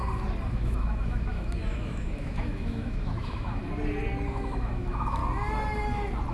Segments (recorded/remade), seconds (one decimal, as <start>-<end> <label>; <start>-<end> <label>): 0.0-0.5 recorded; 0.5-3.6 remade; 3.6-4.3 recorded; 4.3-5.2 remade; 5.2-6.3 recorded